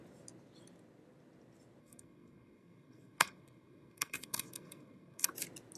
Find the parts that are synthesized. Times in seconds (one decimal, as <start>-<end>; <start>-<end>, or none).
1.8-5.3